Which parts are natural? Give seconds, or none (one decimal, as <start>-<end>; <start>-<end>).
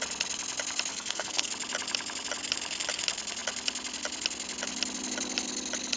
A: 0.0-0.9; 1.5-6.0